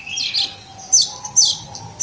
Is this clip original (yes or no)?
yes